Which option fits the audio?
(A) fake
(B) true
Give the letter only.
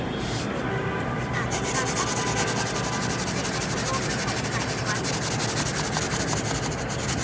B